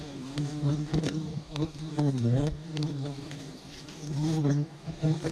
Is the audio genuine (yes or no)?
no